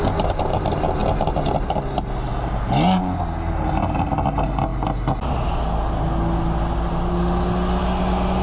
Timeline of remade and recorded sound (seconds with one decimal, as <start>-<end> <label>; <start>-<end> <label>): 0.0-8.4 recorded